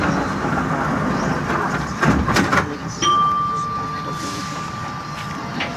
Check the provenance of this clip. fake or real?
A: real